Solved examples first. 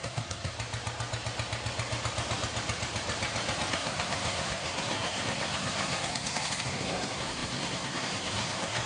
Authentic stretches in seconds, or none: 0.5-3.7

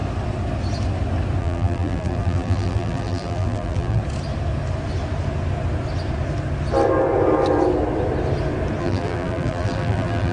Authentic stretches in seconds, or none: 0.0-1.4; 4.0-8.8

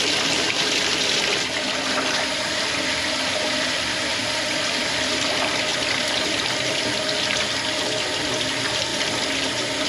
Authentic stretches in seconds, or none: 8.9-9.9

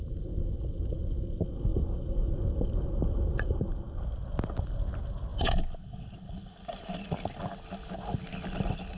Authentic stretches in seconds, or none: 0.0-9.0

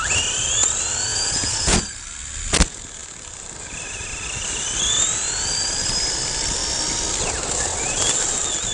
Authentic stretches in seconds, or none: 0.0-1.1; 1.8-8.7